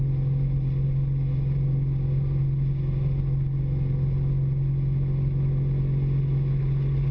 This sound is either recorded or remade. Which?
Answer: recorded